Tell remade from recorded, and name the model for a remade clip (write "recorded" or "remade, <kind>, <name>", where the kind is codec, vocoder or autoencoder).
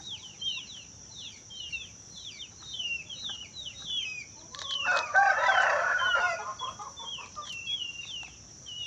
remade, vocoder, BigVGAN v2